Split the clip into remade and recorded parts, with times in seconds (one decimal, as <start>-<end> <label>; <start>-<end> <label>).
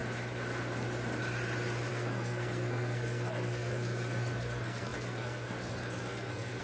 0.0-1.9 recorded; 1.9-6.6 remade